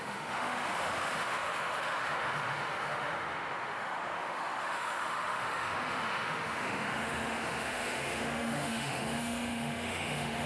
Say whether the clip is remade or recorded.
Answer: remade